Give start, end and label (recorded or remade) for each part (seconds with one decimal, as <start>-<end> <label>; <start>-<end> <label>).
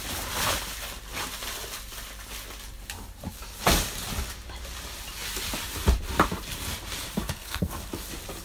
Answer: 0.0-7.2 recorded; 7.2-7.8 remade; 7.8-8.4 recorded